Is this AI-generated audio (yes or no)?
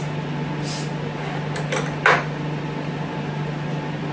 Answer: no